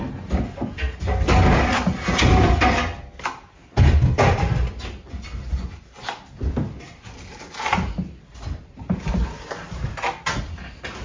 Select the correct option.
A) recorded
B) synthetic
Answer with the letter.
A